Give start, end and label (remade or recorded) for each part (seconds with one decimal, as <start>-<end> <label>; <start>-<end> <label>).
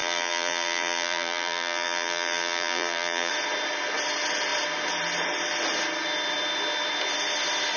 0.0-3.3 remade; 3.3-7.8 recorded